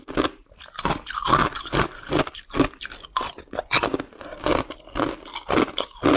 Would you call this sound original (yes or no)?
yes